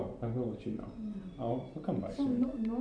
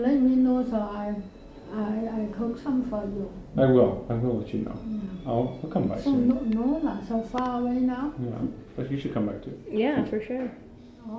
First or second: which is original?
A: second